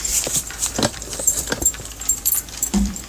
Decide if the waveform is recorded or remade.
remade